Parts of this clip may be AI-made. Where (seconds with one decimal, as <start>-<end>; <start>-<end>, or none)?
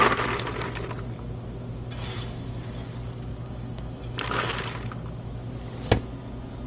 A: 3.3-4.0